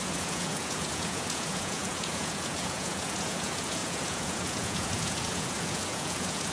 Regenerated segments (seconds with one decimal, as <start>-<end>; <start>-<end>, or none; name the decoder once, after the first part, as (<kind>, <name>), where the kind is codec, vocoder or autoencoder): 0.0-6.5 (vocoder, Vocos)